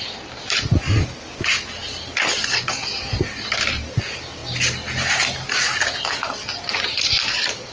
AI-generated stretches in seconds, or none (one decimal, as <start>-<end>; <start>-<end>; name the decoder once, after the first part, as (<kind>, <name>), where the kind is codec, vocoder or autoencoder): none